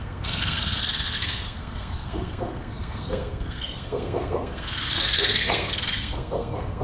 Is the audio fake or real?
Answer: fake